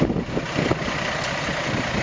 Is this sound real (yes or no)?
yes